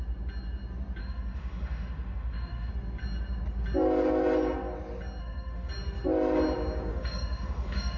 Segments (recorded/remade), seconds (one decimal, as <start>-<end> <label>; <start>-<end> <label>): 0.0-1.0 recorded; 1.0-2.7 remade; 2.7-5.2 recorded; 5.2-5.7 remade; 5.7-6.9 recorded; 6.9-8.0 remade